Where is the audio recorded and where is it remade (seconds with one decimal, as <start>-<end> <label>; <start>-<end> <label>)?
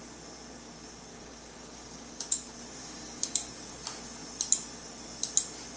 0.0-1.1 recorded; 1.1-2.2 remade; 2.2-2.8 recorded; 2.8-3.5 remade; 3.5-5.8 recorded